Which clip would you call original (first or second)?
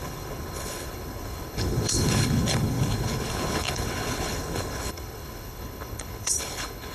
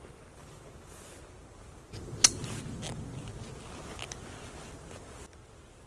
second